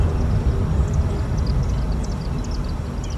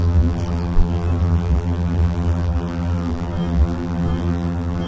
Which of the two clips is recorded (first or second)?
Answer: first